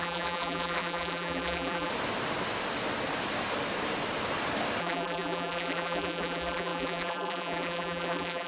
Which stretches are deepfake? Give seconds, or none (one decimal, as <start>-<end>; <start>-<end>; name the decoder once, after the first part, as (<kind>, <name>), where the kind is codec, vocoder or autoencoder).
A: 0.0-1.9 (vocoder, BigVGAN v2); 4.8-8.5